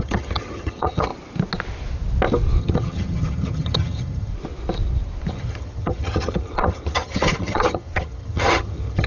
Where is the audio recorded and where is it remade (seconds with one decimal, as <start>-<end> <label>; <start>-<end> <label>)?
0.0-1.1 remade; 1.1-2.6 recorded; 2.6-4.3 remade; 4.3-5.3 recorded; 5.3-9.1 remade